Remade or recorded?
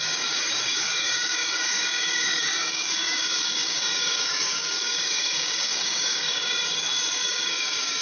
remade